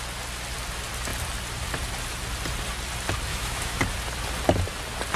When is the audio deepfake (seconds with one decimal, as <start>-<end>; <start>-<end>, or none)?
3.3-3.8